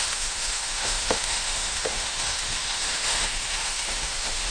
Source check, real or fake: fake